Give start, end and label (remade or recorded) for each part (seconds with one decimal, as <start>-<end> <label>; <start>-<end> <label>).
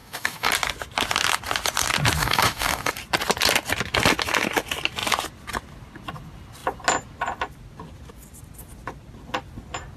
0.0-0.5 remade; 0.5-2.2 recorded; 2.2-2.9 remade; 2.9-10.0 recorded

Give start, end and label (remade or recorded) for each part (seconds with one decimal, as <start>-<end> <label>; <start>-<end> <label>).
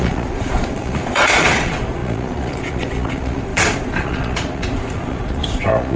0.0-6.0 remade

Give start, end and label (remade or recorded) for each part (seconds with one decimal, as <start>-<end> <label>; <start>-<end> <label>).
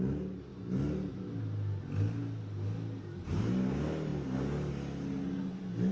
0.0-5.9 recorded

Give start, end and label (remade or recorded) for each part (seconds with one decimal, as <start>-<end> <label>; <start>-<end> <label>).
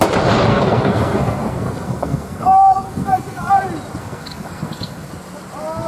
0.0-0.5 recorded; 0.5-3.5 remade; 3.5-4.0 recorded; 4.0-5.1 remade; 5.1-5.9 recorded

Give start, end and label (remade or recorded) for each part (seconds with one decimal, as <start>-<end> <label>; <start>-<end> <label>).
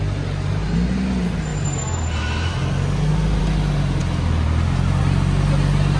0.0-6.0 recorded